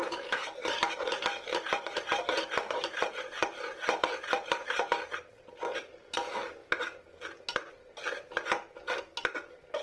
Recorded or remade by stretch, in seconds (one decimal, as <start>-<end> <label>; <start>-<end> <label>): 0.0-0.6 recorded; 0.6-5.2 remade; 5.2-9.8 recorded